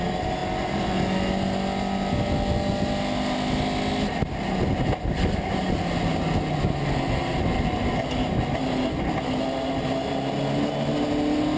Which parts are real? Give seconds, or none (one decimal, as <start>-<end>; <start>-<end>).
0.0-11.6